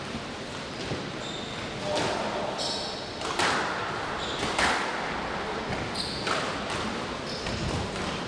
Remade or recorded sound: recorded